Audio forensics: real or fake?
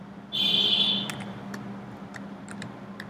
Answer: real